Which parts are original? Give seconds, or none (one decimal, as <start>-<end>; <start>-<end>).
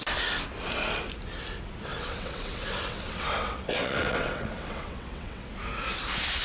0.0-1.9; 5.5-6.4